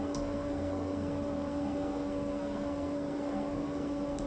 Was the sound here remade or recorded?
remade